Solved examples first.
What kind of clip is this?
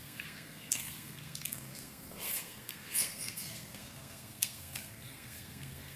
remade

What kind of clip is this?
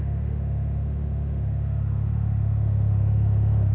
remade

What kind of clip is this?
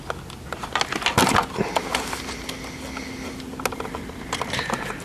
recorded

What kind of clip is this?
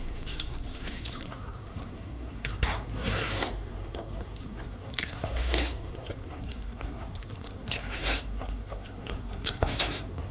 remade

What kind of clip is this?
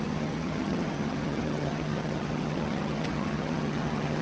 remade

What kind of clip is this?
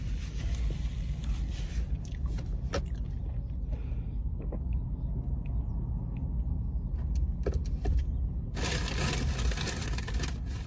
recorded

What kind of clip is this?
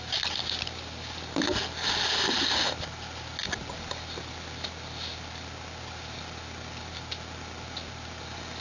recorded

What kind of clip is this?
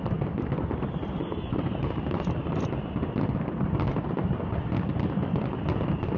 recorded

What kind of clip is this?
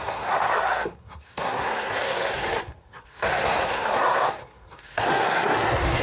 remade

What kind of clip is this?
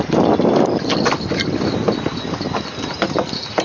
recorded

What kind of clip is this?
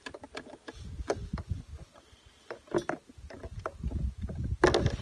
recorded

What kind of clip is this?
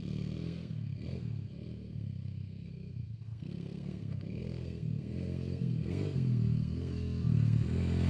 remade